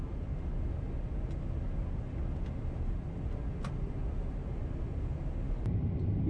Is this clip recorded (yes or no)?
yes